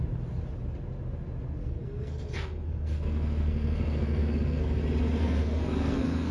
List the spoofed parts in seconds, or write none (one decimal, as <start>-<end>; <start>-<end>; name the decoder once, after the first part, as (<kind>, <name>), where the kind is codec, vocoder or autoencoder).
1.6-4.8 (codec, SNAC); 5.2-6.3